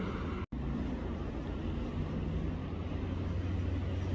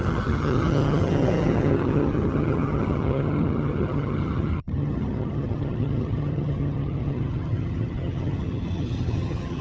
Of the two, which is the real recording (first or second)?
first